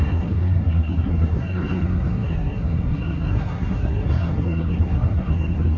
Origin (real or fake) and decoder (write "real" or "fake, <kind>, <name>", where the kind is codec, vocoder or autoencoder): fake, codec, SNAC